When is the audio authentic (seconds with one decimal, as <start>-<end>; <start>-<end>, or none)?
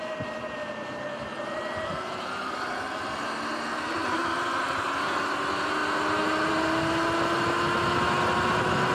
0.0-8.9